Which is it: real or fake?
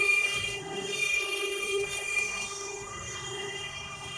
fake